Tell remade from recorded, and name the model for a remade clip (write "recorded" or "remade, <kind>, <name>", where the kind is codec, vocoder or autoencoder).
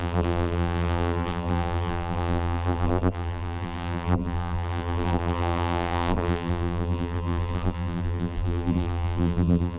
remade, vocoder, BigVGAN v2